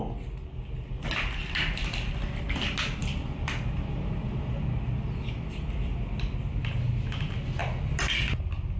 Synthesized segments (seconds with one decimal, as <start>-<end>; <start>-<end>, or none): none